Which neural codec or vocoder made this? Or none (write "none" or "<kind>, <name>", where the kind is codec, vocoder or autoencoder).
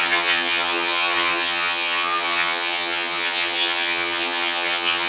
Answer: vocoder, HiFi-GAN